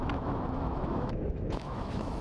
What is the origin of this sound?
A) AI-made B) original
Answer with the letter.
A